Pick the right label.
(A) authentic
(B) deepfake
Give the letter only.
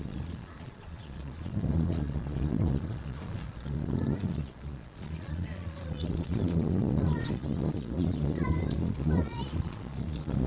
B